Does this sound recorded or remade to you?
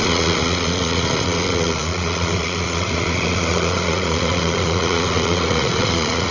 remade